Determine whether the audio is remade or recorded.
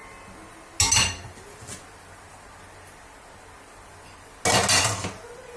recorded